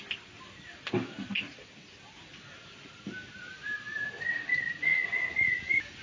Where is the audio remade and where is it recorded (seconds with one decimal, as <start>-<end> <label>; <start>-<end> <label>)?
0.0-4.9 recorded; 4.9-5.5 remade; 5.5-6.0 recorded